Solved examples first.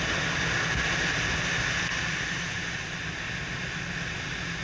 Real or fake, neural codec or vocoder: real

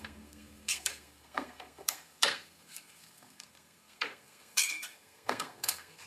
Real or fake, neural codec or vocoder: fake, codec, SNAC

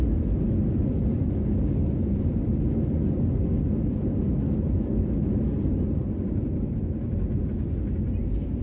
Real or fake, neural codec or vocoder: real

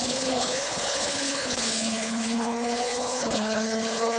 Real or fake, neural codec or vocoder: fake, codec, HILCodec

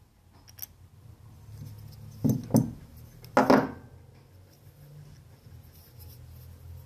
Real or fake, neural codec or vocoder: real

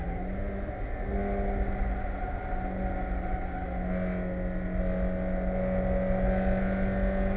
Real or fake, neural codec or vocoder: real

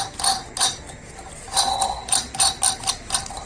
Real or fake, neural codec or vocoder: real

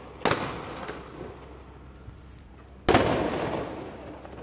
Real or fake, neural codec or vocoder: real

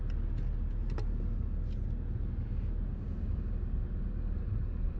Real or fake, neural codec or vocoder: real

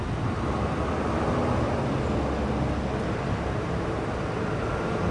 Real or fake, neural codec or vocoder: real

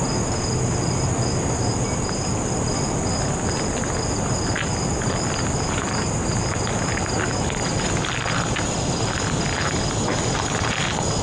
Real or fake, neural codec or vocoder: real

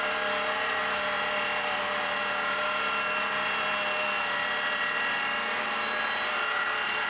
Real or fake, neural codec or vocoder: real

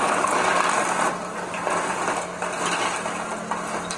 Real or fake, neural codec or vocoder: real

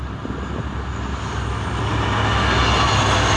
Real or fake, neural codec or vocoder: real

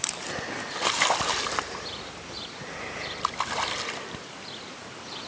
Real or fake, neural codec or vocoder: real